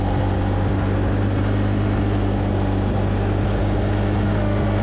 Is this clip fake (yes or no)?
no